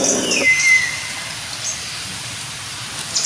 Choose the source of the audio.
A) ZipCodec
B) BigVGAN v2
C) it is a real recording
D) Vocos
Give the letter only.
B